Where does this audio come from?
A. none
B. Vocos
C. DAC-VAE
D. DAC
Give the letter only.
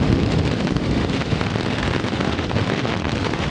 C